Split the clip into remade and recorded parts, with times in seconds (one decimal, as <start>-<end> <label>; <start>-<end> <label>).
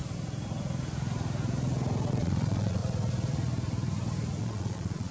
0.0-2.1 recorded; 2.1-2.8 remade; 2.8-4.4 recorded; 4.4-5.1 remade